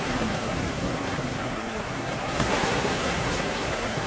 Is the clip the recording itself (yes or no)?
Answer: no